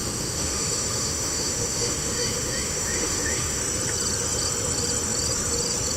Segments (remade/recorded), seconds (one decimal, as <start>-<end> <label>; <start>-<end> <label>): 0.0-3.6 remade; 3.6-6.0 recorded